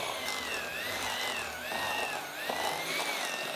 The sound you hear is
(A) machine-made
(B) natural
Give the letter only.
B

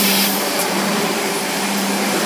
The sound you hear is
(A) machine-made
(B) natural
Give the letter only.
A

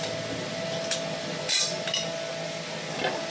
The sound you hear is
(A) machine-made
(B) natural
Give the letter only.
B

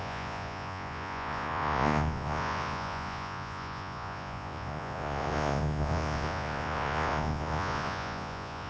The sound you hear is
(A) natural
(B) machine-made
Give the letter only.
B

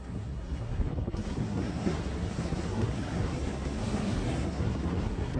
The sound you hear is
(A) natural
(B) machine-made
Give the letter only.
B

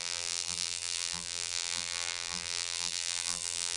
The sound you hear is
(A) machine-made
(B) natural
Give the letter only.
A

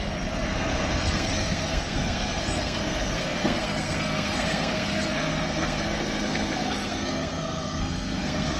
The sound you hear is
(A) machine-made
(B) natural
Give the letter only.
A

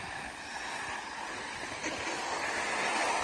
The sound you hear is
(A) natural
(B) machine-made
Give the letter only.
A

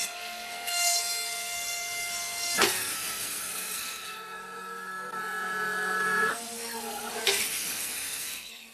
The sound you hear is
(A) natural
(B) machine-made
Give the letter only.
B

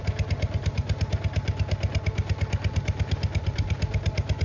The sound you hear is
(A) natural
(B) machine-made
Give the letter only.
A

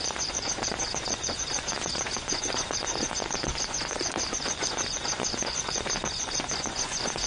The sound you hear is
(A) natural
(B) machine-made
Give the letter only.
B